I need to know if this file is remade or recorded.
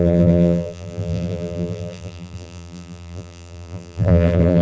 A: remade